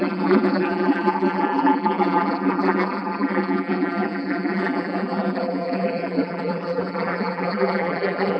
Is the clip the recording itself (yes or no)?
no